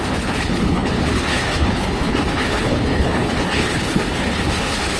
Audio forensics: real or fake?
fake